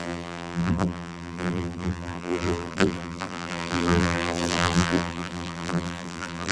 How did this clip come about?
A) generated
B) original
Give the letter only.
A